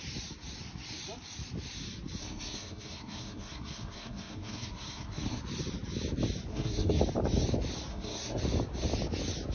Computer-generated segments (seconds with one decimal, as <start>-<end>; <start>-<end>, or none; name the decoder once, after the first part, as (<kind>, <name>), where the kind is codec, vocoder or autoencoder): 2.2-5.4 (codec, SNAC); 6.5-7.0; 7.9-8.4